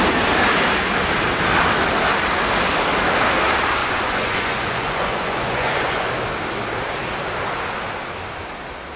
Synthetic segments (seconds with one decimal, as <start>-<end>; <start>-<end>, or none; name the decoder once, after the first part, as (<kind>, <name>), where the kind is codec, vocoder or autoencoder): 3.8-6.1 (vocoder, Vocos)